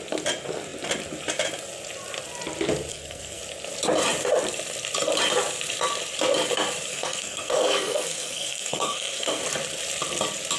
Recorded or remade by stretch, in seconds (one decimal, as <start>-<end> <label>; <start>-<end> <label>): 0.0-2.9 recorded; 2.9-3.4 remade; 3.4-6.9 recorded; 6.9-9.4 remade; 9.4-10.6 recorded